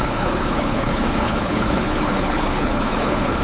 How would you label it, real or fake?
fake